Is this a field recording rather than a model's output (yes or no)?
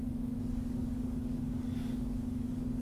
no